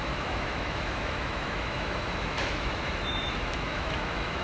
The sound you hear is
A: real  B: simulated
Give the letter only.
B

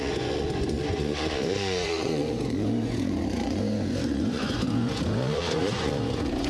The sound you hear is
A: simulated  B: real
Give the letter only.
A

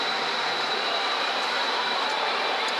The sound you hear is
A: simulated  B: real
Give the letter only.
A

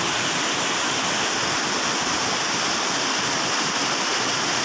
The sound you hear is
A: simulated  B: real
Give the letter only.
B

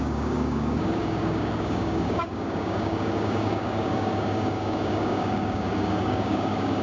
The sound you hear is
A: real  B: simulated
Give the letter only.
B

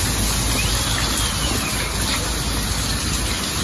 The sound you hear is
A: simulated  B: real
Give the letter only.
B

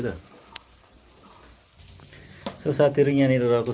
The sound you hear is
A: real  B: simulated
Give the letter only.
A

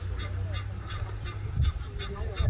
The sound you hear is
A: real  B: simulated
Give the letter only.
A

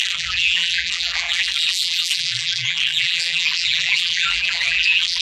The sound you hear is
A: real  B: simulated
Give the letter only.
B